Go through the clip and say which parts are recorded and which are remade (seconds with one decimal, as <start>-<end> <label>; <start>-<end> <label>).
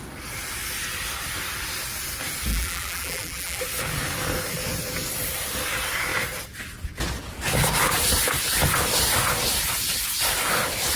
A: 0.0-2.5 recorded; 2.5-3.6 remade; 3.6-11.0 recorded